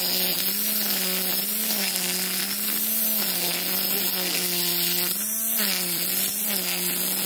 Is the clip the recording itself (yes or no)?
yes